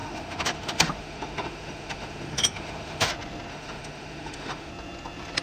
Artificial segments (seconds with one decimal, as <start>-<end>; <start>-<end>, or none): 0.0-3.1; 3.5-4.7

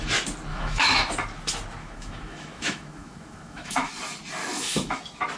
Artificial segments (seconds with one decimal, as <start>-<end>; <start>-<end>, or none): 0.5-1.1; 1.8-3.9; 4.4-5.0

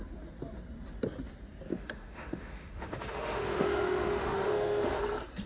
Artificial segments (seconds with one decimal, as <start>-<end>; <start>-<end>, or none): 1.7-5.0

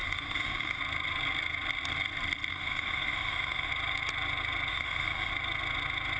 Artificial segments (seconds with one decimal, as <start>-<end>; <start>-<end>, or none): 0.0-0.8; 2.5-3.7; 4.7-5.3

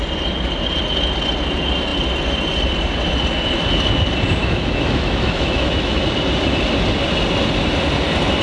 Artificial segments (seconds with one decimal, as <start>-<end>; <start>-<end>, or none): 4.4-6.0

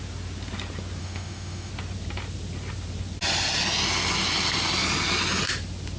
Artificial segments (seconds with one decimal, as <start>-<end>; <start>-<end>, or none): 1.0-1.7

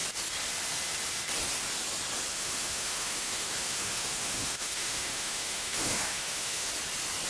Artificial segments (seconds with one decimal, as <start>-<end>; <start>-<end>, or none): 2.3-6.7

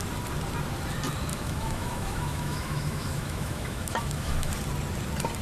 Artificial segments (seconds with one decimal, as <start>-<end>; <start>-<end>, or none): 1.3-4.5